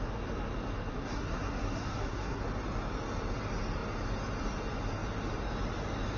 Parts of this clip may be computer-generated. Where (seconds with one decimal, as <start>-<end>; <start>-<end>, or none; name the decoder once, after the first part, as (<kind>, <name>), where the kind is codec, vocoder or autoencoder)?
0.9-2.4 (codec, SNAC)